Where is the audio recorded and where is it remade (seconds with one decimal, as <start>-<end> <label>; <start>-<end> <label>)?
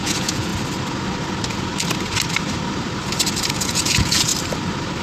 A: 0.0-0.5 remade; 0.5-3.5 recorded; 3.5-4.3 remade; 4.3-5.0 recorded